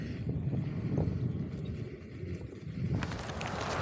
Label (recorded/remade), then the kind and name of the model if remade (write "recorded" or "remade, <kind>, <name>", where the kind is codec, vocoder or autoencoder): recorded